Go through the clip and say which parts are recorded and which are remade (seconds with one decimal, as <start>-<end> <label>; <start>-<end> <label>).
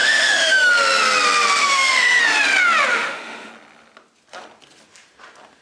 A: 0.0-0.7 remade; 0.7-1.6 recorded; 1.6-2.2 remade; 2.2-2.9 recorded; 2.9-3.5 remade; 3.5-5.6 recorded